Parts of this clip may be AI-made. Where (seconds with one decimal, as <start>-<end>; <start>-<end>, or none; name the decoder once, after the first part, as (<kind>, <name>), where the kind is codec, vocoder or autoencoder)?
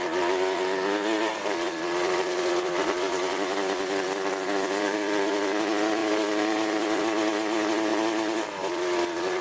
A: 1.3-5.3 (vocoder, BigVGAN v2); 6.0-7.0; 7.9-9.4